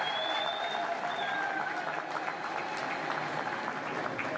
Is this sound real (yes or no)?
yes